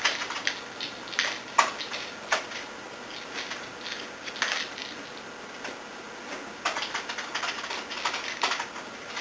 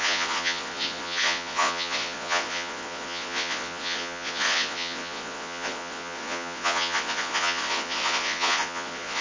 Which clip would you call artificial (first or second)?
second